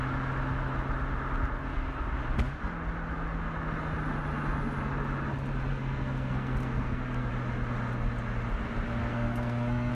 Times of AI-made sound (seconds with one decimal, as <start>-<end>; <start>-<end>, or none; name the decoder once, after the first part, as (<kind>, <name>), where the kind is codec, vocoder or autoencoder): 5.7-7.3 (codec, SNAC); 9.0-9.9